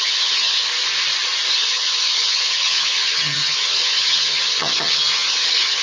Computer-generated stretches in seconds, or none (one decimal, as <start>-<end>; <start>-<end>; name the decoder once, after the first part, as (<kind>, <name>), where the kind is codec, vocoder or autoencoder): 0.0-0.7 (vocoder, HiFi-GAN); 1.5-5.8